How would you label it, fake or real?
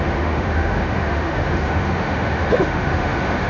fake